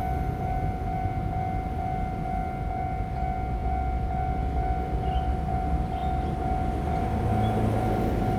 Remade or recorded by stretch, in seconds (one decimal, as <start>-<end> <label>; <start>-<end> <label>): 0.0-8.4 recorded